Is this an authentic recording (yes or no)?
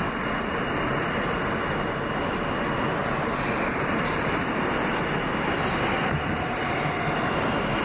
yes